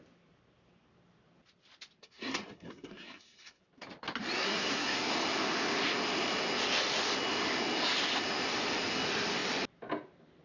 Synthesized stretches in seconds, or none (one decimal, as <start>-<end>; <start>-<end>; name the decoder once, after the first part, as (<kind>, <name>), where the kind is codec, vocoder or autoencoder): 2.0-3.6 (codec, SNAC); 4.4-5.1